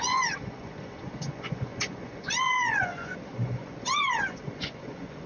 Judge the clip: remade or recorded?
remade